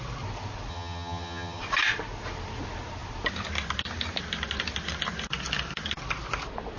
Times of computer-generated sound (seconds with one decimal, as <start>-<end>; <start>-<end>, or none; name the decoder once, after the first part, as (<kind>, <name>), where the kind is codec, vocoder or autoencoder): 0.7-1.6 (vocoder, HiFi-GAN)